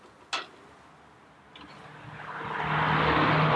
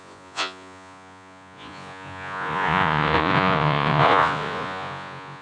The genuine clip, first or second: first